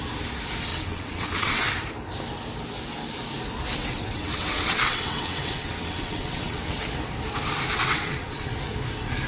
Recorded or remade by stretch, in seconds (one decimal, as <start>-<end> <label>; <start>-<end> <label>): 0.0-0.7 recorded; 0.7-1.7 remade; 1.7-3.8 recorded; 3.8-6.8 remade; 6.8-7.7 recorded; 7.7-8.5 remade; 8.5-9.3 recorded